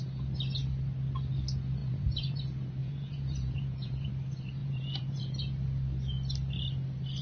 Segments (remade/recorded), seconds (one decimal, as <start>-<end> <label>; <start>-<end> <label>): 0.0-1.8 recorded; 1.8-2.4 remade; 2.4-2.8 recorded; 2.8-4.1 remade; 4.1-4.6 recorded; 4.6-5.3 remade; 5.3-7.2 recorded